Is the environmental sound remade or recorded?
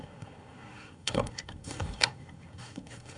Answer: remade